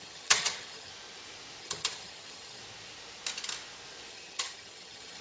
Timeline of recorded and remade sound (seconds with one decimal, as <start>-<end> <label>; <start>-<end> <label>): 0.0-0.9 remade; 0.9-1.6 recorded; 1.6-2.6 remade; 2.6-4.1 recorded; 4.1-5.2 remade